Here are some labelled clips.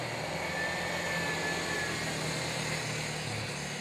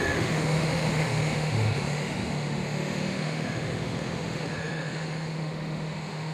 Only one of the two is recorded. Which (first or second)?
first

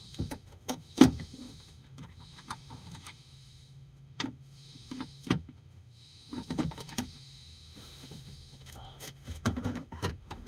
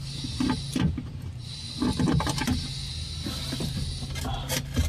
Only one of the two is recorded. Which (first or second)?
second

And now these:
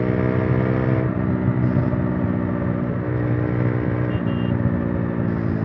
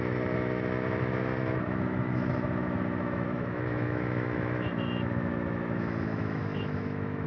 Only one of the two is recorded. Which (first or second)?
first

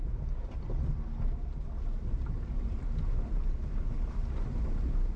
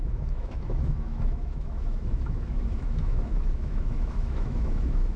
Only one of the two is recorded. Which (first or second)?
first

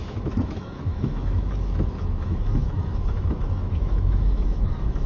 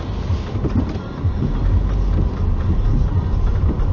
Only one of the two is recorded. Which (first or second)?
second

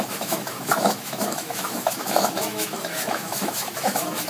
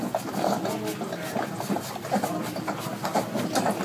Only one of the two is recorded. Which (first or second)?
second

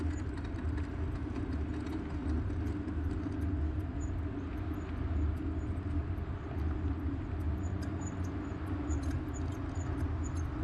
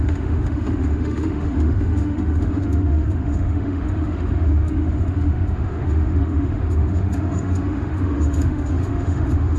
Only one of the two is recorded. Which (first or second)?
first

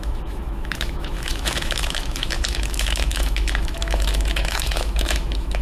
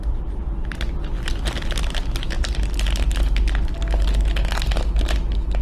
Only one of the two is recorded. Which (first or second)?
second